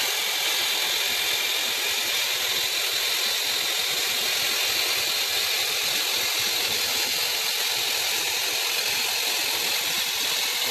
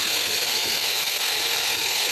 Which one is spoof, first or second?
second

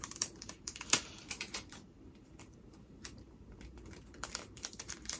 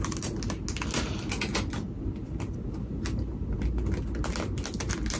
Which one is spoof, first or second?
first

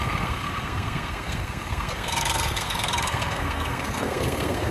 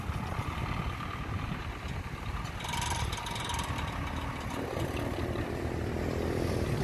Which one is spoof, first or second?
first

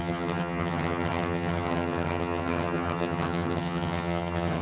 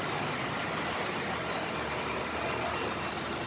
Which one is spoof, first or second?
first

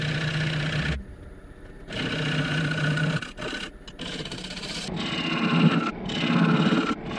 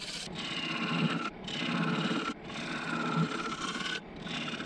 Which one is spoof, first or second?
second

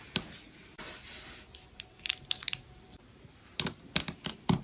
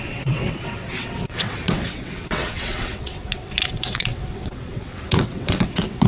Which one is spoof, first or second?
second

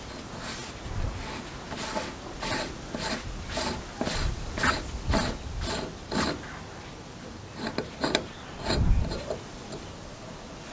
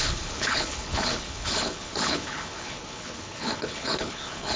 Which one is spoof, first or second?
second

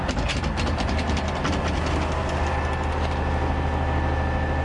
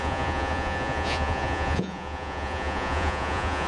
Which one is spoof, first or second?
second